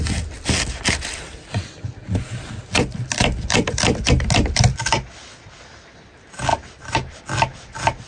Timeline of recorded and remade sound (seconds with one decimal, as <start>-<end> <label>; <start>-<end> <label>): 0.0-6.5 recorded; 6.5-7.2 remade; 7.2-8.1 recorded